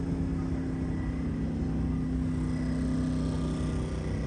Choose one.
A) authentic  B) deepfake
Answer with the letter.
A